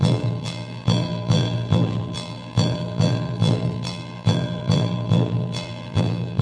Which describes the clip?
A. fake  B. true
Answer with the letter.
A